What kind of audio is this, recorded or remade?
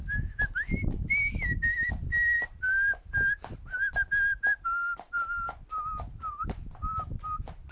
recorded